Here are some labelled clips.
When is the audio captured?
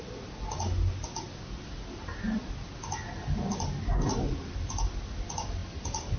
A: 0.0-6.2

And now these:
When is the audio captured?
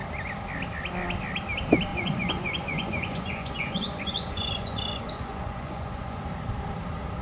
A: 0.0-1.9; 6.2-7.2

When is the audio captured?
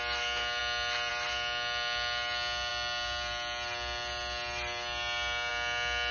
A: 0.0-6.1